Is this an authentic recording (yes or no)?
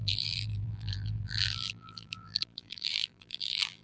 no